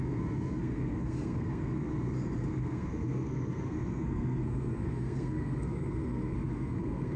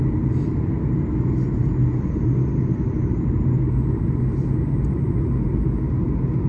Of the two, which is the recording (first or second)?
second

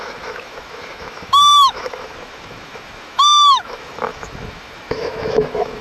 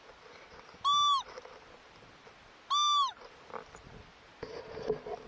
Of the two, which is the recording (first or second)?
second